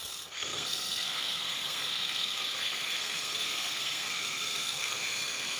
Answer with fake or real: fake